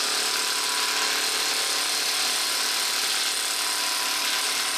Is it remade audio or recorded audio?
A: recorded